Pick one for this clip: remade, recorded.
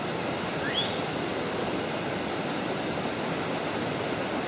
recorded